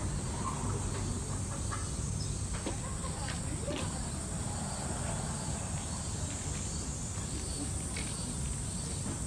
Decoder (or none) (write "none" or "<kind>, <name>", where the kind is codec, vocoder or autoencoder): none